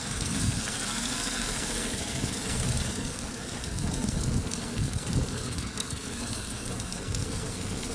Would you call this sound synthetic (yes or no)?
yes